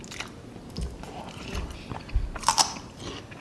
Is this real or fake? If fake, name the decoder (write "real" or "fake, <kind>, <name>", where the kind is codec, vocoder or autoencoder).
real